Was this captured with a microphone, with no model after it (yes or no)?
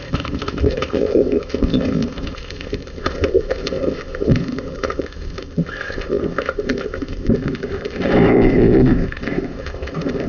no